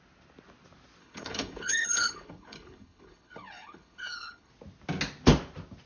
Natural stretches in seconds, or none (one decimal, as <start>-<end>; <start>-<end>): 0.0-1.0; 4.5-5.9